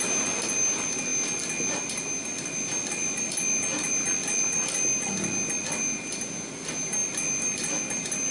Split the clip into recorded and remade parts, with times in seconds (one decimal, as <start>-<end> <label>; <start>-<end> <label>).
0.0-8.3 recorded